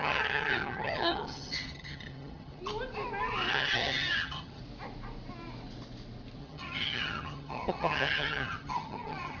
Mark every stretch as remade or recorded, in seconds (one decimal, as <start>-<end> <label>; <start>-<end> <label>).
0.0-2.6 remade; 2.6-3.5 recorded; 3.5-4.6 remade; 4.6-6.4 recorded; 6.4-9.4 remade